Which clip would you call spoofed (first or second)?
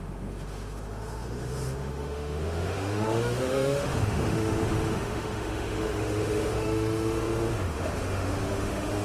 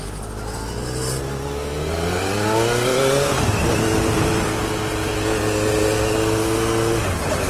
first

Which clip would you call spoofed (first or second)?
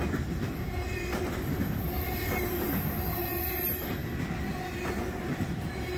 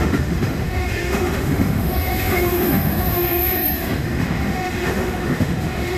second